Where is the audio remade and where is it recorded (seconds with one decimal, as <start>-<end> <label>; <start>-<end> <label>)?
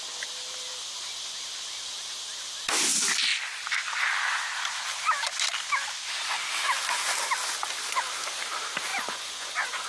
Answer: 0.0-8.9 recorded; 8.9-9.9 remade